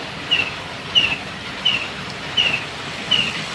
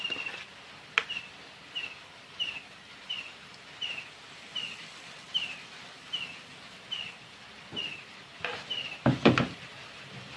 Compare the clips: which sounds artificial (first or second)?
first